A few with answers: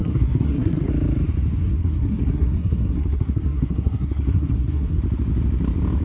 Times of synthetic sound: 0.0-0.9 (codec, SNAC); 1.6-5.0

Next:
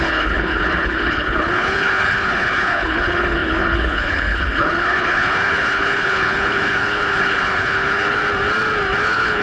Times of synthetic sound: 0.0-8.2 (codec, HILCodec); 9.0-9.4

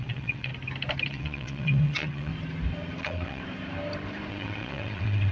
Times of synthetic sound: 0.0-0.5 (vocoder, WaveNeXt); 1.1-2.3; 3.0-3.4; 4.3-5.3

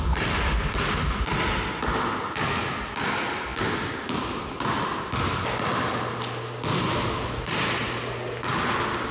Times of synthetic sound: none

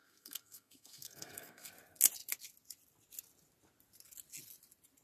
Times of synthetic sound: 0.0-1.7 (codec, SNAC)

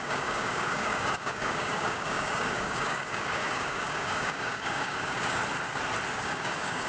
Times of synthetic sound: 0.0-5.4 (codec, DAC); 6.1-6.9

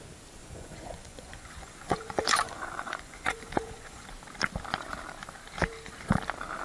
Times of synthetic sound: 0.4-4.1 (vocoder, Vocos)

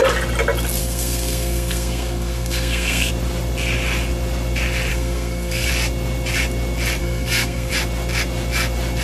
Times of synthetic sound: 0.8-3.1 (codec, SNAC); 4.9-5.7; 7.0-7.7